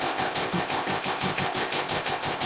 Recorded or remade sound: remade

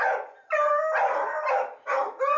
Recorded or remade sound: recorded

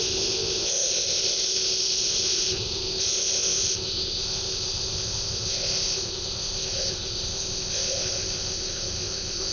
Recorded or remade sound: remade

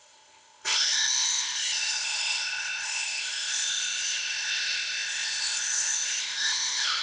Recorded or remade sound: remade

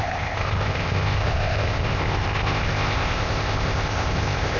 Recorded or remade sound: remade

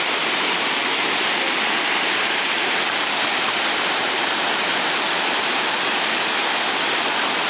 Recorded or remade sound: recorded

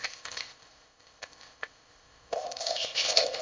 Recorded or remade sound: remade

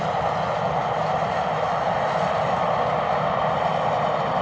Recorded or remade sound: recorded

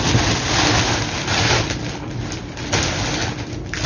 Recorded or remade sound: recorded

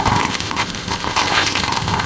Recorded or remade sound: remade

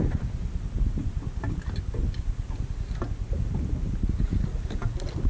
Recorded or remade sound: recorded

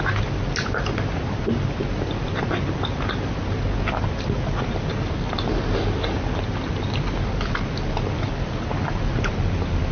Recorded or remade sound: recorded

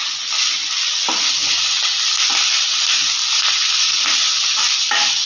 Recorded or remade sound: recorded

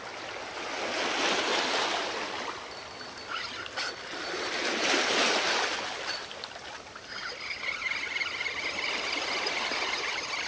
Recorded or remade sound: recorded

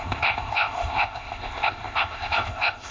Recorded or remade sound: remade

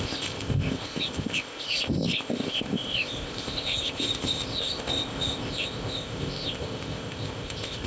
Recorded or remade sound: remade